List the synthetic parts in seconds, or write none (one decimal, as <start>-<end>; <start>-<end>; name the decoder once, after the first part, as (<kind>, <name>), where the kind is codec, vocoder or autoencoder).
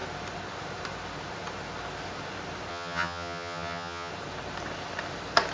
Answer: 2.7-4.1 (vocoder, HiFi-GAN)